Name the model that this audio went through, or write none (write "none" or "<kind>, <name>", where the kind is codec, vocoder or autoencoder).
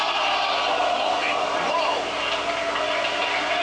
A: none